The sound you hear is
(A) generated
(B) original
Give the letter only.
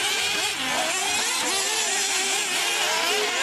B